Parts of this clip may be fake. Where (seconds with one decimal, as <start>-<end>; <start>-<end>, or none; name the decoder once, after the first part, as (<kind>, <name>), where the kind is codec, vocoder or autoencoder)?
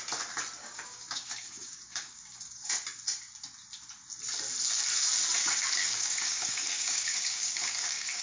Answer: 0.6-2.7 (codec, DAC); 5.8-8.2